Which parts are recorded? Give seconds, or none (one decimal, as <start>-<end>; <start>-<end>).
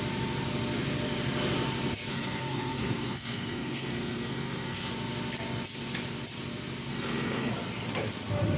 0.0-2.1; 4.9-6.9; 7.5-8.6